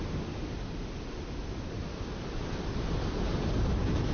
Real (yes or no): yes